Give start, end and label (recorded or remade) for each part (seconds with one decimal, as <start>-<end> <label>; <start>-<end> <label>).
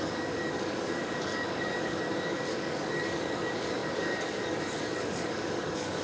0.0-6.0 remade